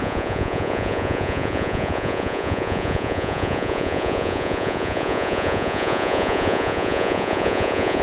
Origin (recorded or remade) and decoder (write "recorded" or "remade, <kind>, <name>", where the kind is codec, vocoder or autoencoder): remade, vocoder, Vocos